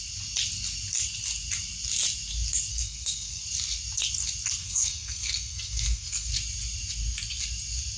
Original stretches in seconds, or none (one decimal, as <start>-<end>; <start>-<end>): 0.0-2.7; 3.4-4.6; 6.3-8.0